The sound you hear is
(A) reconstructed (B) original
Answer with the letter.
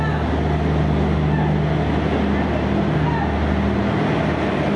B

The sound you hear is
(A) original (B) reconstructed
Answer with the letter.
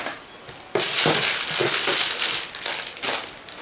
A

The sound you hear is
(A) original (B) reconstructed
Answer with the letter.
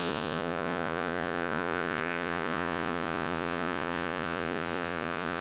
B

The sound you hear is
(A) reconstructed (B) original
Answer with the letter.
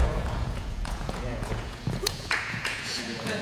A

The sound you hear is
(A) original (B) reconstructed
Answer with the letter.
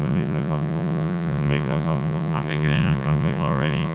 B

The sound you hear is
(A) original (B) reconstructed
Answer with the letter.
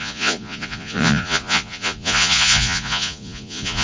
B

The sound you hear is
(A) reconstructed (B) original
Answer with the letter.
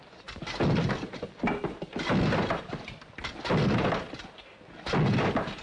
B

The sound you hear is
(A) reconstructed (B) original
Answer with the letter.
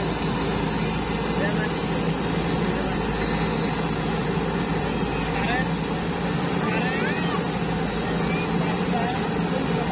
B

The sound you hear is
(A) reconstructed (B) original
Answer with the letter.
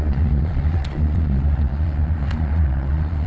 A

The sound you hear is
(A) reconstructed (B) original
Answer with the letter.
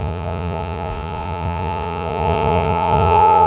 A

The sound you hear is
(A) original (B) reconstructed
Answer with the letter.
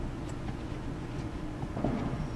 B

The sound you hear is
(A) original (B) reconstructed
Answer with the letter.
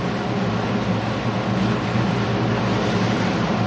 A